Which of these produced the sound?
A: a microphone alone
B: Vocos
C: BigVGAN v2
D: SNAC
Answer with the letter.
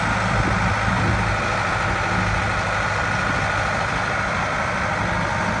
A